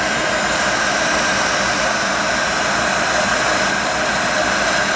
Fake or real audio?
real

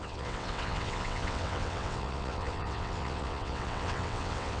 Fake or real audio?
fake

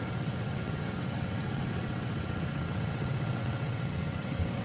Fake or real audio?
fake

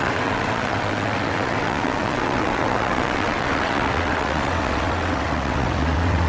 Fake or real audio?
fake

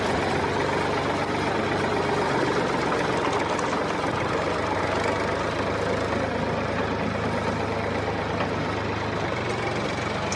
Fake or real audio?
real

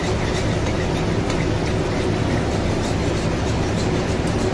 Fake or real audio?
real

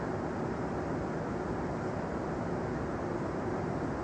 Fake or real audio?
real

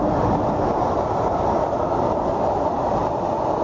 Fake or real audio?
real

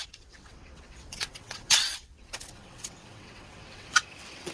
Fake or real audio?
fake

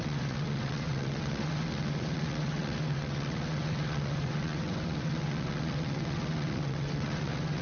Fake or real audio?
fake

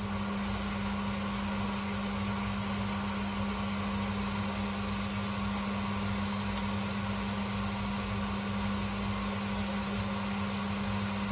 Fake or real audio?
real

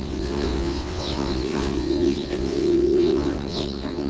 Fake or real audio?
fake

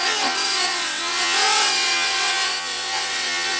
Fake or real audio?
fake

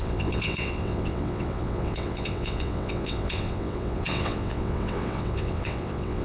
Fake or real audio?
fake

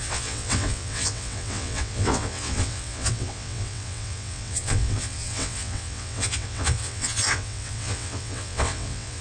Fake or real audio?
fake